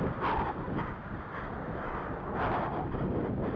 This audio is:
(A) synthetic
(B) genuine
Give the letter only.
B